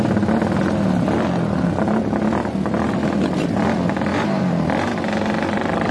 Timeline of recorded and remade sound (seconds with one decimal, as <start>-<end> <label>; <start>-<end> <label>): 0.0-4.1 recorded; 4.1-5.9 remade